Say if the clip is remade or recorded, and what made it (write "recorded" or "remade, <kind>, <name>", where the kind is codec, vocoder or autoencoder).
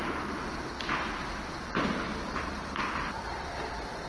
recorded